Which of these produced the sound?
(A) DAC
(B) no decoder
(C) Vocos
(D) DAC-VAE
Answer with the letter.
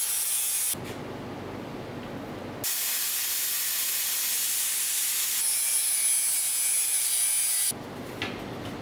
B